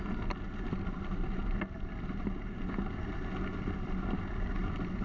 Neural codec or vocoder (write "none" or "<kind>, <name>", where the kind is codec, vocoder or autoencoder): none